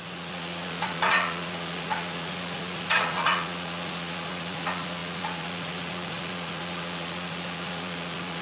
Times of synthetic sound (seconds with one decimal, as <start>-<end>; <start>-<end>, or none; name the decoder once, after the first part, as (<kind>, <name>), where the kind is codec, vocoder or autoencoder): 0.0-8.4 (vocoder, Vocos)